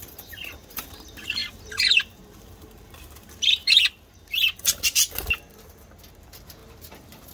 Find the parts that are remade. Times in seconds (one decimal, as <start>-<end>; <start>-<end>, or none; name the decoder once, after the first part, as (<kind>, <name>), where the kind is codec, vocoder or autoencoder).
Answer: 0.0-3.6 (vocoder, BigVGAN v2); 6.1-7.3